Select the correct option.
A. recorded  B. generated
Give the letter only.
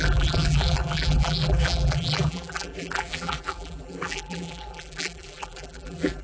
B